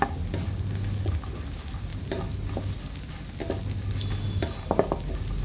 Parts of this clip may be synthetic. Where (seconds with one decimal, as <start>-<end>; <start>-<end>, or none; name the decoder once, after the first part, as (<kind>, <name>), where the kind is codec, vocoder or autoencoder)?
none